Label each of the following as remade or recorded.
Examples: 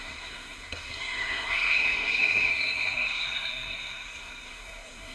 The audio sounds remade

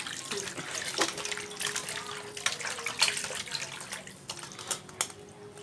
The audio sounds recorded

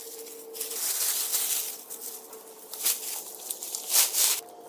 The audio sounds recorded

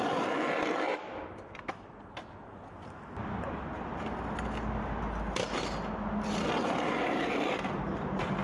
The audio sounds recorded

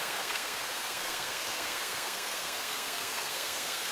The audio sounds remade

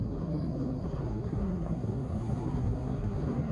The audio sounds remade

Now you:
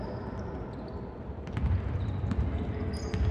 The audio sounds recorded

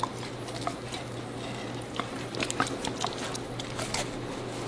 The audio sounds recorded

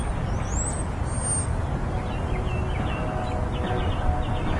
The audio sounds recorded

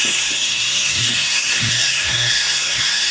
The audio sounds remade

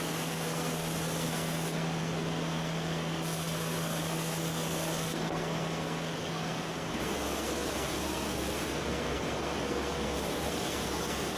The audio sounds remade